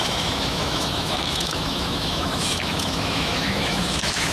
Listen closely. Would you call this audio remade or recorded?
remade